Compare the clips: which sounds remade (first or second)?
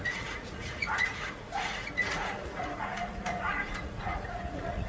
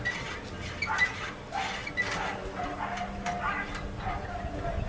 first